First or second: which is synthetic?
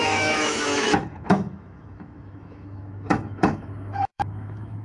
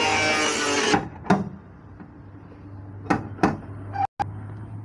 first